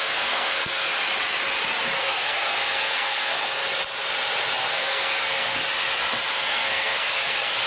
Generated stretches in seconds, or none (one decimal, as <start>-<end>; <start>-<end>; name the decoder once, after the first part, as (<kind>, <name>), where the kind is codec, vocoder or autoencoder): 0.0-0.9 (codec, SNAC); 2.0-3.6; 4.7-5.6; 6.3-7.7